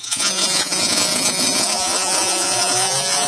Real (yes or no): no